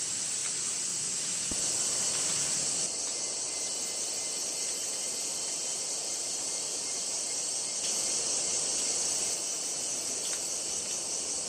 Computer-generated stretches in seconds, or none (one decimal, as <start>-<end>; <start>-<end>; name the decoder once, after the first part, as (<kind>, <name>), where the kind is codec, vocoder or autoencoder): 5.0-7.6 (vocoder, BigVGAN v2)